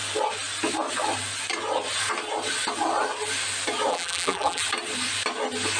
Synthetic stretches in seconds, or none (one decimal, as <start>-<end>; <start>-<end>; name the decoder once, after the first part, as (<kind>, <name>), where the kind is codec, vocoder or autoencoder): 3.9-4.6 (vocoder, BigVGAN v2)